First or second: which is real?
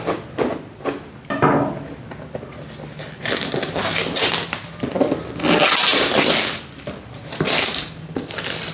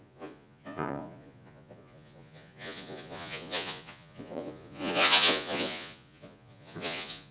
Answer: first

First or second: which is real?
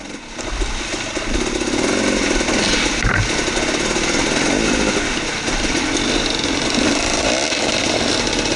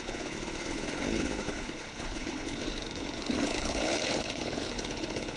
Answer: first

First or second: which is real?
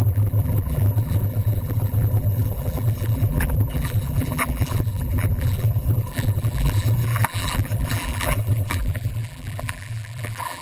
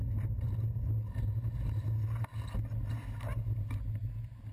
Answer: second